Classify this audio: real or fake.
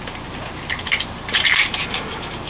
fake